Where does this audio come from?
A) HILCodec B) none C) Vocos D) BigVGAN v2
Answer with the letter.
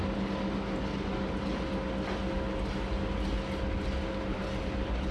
B